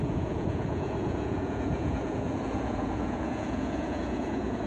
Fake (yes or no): yes